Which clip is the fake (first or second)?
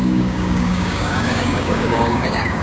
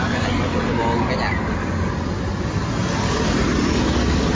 first